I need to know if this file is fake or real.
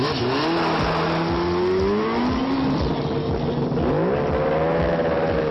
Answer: real